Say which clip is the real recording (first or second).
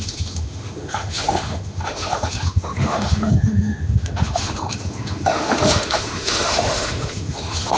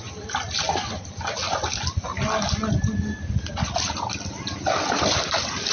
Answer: second